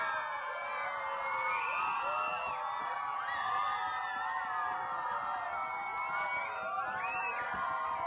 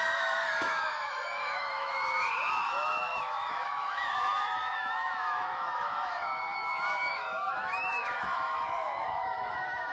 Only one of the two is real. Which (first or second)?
first